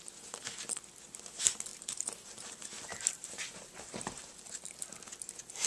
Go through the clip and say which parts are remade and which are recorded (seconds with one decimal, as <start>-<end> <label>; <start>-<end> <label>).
0.0-1.7 recorded; 1.7-2.3 remade; 2.3-2.9 recorded; 2.9-4.5 remade; 4.5-5.7 recorded